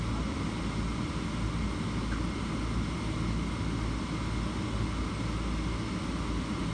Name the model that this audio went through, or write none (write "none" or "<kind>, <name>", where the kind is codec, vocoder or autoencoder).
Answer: none